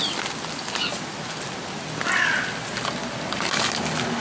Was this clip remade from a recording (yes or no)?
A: no